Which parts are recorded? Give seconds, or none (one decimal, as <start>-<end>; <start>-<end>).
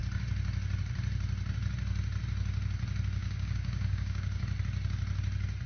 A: 0.0-3.2; 4.4-5.7